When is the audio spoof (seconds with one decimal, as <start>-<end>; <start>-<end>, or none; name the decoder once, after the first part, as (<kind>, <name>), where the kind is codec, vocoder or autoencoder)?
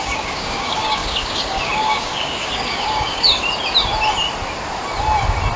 0.0-3.3 (codec, DAC)